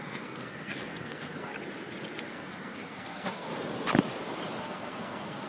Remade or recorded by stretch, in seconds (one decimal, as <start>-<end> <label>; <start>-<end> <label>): 0.0-1.5 remade; 1.5-2.3 recorded; 2.3-3.5 remade; 3.5-4.6 recorded; 4.6-5.5 remade